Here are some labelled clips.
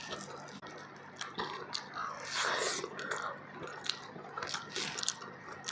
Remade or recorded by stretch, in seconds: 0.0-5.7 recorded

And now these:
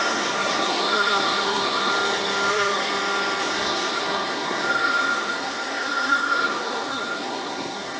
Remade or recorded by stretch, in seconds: 0.0-1.9 remade; 1.9-2.5 recorded; 2.5-2.9 remade; 2.9-3.4 recorded; 3.4-8.0 remade

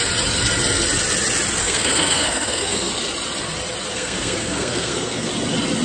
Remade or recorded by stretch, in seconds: 0.0-1.6 recorded; 1.6-2.9 remade; 2.9-3.9 recorded; 3.9-5.3 remade; 5.3-5.8 recorded

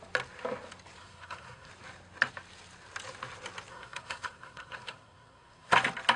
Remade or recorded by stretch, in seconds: 0.0-1.0 recorded; 1.0-1.7 remade; 1.7-3.7 recorded; 3.7-5.7 remade; 5.7-6.2 recorded

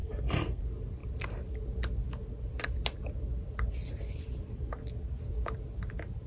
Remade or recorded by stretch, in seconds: 0.0-0.6 remade; 0.6-6.3 recorded

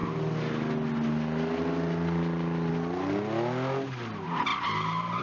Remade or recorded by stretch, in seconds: 0.0-5.2 recorded

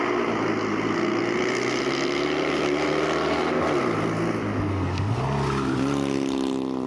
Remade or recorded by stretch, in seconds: 0.0-4.7 recorded; 4.7-5.2 remade; 5.2-6.9 recorded

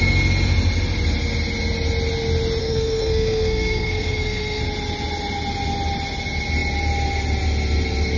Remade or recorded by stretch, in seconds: 0.0-2.6 recorded; 2.6-4.6 remade; 4.6-8.2 recorded